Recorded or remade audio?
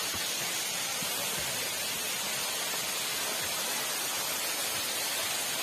recorded